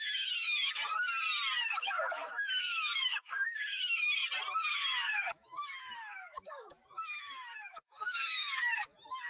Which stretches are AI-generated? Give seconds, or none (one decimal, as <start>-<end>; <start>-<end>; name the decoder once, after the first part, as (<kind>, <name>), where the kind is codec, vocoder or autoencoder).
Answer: 0.0-0.8 (autoencoder, DAC-VAE); 1.6-4.2; 4.7-9.3